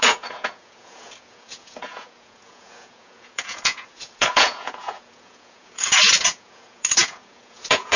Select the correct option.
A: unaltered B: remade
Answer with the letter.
B